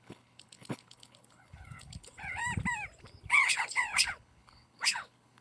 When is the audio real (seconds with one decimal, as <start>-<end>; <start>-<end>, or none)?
2.4-3.0